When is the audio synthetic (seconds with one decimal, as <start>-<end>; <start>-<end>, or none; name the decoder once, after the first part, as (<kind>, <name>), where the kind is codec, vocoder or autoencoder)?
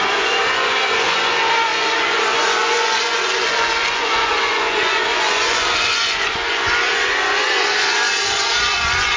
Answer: 0.0-9.2 (vocoder, Vocos)